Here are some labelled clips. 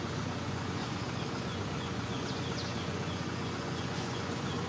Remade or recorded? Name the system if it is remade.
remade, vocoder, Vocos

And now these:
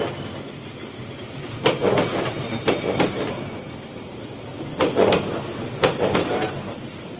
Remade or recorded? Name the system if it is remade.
recorded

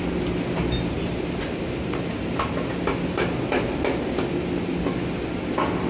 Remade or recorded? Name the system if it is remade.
recorded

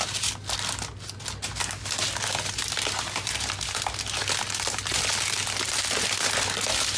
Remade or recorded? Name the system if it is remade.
recorded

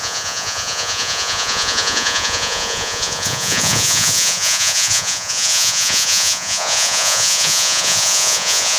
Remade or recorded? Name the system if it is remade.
remade, vocoder, Vocos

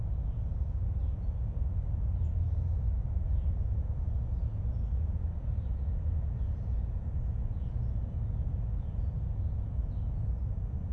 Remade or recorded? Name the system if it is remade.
remade, vocoder, Vocos